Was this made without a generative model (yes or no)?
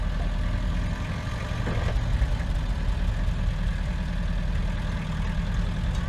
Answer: yes